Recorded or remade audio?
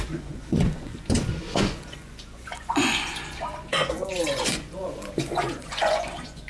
remade